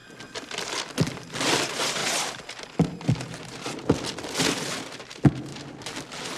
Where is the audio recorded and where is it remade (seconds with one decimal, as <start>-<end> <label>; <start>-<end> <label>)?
0.0-6.4 recorded